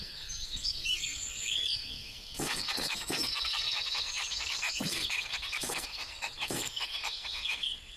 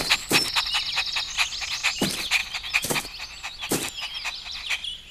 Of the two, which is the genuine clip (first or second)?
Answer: second